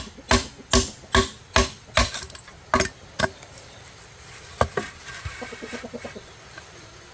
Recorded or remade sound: recorded